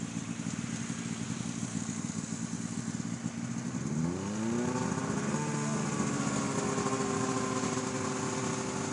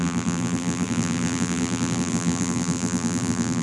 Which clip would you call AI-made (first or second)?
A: second